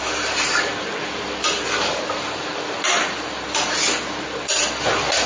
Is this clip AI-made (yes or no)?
no